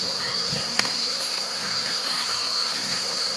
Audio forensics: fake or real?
fake